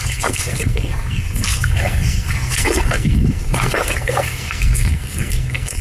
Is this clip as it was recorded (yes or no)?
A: no